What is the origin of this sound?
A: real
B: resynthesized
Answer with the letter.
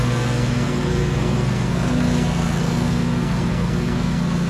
B